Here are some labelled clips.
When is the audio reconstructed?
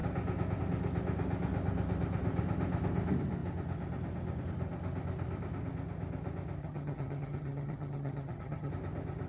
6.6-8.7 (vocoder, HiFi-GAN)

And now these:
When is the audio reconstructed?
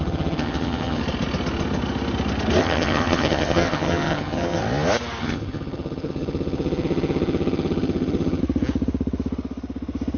0.0-1.0 (vocoder, HiFi-GAN); 2.6-4.6; 5.2-8.4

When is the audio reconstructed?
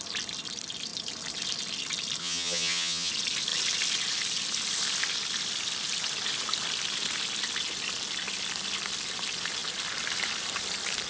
2.2-3.1 (vocoder, HiFi-GAN)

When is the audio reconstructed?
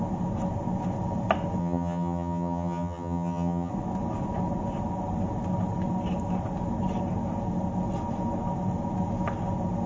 1.6-3.7 (vocoder, HiFi-GAN)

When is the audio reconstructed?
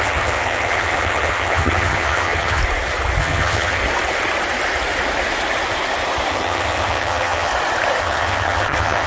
0.0-2.6 (vocoder, HiFi-GAN); 3.2-3.8; 6.3-7.5; 8.0-9.1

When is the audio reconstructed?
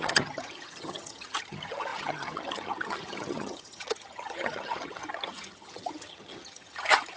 0.0-7.2 (vocoder, HiFi-GAN)